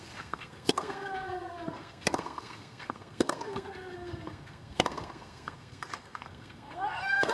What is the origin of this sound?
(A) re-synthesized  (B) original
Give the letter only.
A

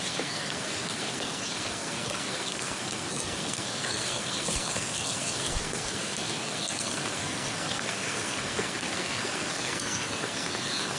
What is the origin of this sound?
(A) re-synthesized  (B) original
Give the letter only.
A